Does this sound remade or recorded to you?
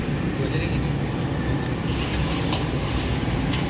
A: recorded